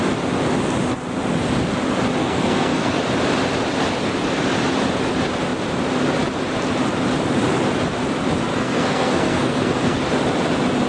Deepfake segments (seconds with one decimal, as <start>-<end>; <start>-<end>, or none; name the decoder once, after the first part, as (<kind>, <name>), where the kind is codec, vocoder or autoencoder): 2.2-3.0 (codec, SNAC); 8.5-10.0